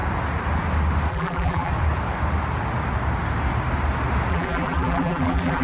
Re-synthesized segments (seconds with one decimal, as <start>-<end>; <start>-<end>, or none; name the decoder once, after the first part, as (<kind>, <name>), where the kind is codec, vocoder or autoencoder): 1.1-1.7 (vocoder, BigVGAN v2); 4.3-5.6